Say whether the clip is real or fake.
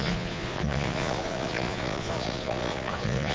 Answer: fake